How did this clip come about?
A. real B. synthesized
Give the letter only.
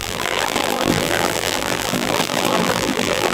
B